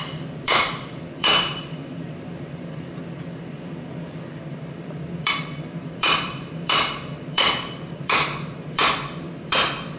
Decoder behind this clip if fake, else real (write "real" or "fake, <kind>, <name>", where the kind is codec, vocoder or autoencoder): fake, vocoder, BigVGAN v2